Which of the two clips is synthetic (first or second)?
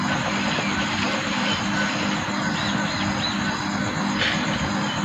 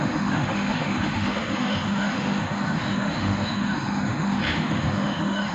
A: second